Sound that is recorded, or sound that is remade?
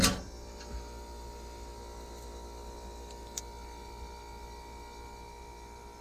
recorded